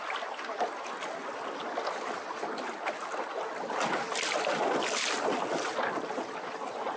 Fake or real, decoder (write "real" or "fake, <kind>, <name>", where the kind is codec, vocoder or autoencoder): real